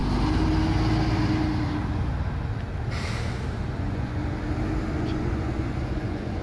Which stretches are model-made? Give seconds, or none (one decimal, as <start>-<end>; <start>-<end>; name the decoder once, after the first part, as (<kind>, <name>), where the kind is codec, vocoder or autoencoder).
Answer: 3.8-4.2 (vocoder, Vocos); 5.0-6.4